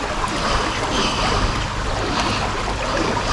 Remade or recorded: recorded